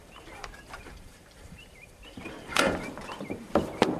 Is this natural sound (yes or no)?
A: no